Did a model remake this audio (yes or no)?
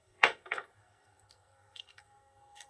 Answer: yes